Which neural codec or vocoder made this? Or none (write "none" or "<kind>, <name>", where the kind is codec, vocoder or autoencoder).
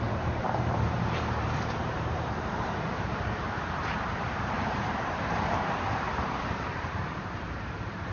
vocoder, BigVGAN v2